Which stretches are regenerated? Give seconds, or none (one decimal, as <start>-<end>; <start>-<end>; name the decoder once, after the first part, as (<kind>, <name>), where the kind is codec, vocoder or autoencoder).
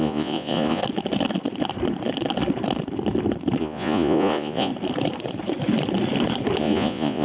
0.0-0.8 (vocoder, Vocos); 3.6-4.7; 6.6-7.2